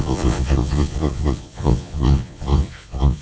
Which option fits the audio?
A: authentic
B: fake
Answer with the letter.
B